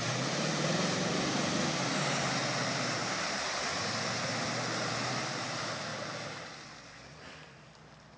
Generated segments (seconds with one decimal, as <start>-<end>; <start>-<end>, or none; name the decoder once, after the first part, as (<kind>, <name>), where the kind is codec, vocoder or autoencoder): 0.0-5.9 (vocoder, BigVGAN v2)

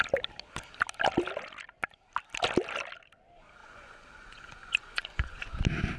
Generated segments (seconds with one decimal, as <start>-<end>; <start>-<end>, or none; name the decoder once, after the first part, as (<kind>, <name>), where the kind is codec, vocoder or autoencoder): 3.6-5.6 (vocoder, Vocos)

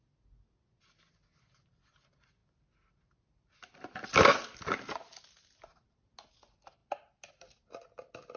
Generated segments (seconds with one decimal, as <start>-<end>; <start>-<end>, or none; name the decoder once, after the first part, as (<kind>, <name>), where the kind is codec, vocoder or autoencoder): none

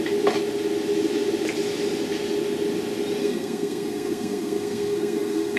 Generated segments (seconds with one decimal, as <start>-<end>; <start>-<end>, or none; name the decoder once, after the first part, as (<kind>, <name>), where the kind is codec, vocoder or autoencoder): 3.2-5.6 (codec, SNAC)

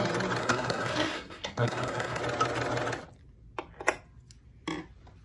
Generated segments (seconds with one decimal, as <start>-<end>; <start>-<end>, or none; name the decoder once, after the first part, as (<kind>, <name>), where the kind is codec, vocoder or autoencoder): 0.4-2.2 (codec, SNAC)

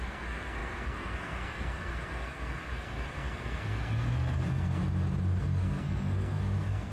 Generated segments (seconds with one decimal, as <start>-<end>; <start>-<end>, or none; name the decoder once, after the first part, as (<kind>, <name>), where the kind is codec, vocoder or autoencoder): 0.0-4.8 (codec, SNAC); 5.4-6.9

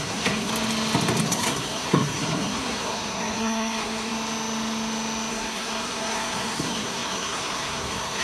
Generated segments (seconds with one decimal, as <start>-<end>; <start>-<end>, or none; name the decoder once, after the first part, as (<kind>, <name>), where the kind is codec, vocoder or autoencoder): 0.0-0.5 (codec, SNAC); 1.2-4.1; 5.3-8.2

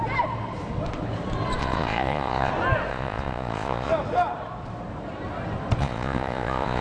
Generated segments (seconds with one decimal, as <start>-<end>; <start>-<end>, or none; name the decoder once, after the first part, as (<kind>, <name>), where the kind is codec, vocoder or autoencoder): 1.6-2.5 (vocoder, Vocos); 2.9-3.9; 5.8-6.8